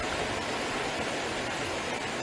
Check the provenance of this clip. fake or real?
real